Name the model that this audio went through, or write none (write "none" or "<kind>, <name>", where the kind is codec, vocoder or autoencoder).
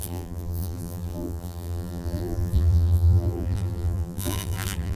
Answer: vocoder, BigVGAN v2